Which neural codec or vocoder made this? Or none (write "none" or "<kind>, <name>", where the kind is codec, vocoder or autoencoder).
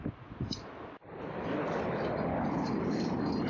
none